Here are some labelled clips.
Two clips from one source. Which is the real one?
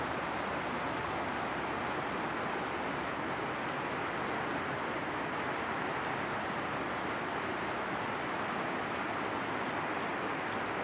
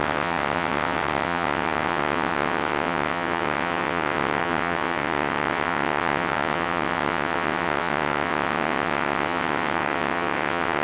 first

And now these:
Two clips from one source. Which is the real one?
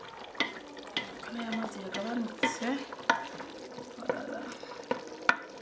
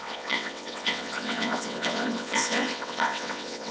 first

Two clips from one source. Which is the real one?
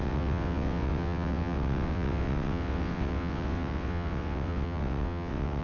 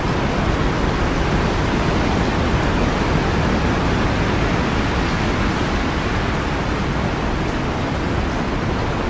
second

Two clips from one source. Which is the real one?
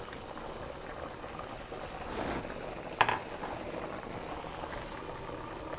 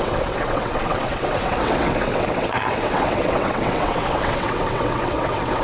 first